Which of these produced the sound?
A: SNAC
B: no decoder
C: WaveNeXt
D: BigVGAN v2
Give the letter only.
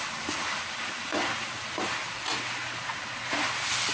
B